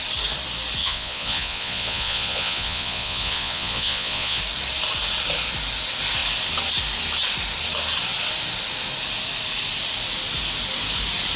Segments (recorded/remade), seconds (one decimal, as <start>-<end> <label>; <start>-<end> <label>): 0.0-0.8 recorded; 0.8-4.4 remade; 4.4-11.4 recorded